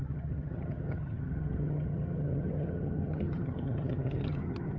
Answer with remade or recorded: remade